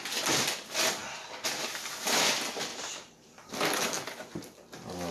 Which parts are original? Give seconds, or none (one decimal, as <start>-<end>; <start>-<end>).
0.0-2.7; 3.5-5.1